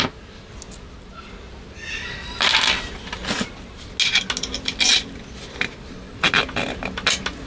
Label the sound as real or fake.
real